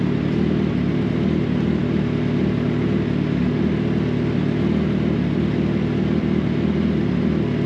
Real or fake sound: real